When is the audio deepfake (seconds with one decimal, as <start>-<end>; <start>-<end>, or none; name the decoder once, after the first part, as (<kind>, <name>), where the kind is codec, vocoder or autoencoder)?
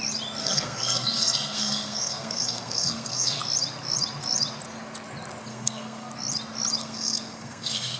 0.4-3.4 (codec, SNAC); 5.5-6.1; 6.8-8.0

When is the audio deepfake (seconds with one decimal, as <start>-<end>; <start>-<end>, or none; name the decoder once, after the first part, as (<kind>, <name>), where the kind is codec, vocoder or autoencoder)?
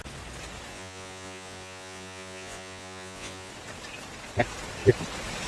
0.7-3.5 (vocoder, Vocos)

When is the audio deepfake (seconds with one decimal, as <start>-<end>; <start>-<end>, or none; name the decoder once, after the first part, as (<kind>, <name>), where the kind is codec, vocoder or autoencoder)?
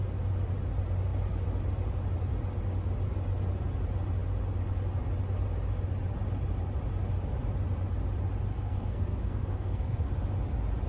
8.5-10.1 (codec, SNAC)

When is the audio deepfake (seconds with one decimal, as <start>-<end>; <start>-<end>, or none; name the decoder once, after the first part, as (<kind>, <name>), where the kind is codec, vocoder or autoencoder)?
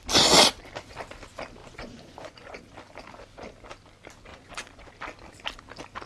1.6-2.6 (vocoder, Vocos); 4.3-4.9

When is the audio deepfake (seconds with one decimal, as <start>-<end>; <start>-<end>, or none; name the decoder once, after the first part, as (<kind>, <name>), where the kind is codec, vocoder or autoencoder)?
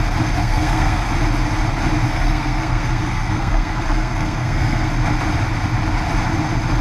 0.4-1.1 (codec, SNAC); 2.1-4.9